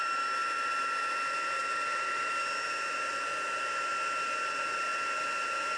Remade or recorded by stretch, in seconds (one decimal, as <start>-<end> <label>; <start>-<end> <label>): 0.0-5.8 recorded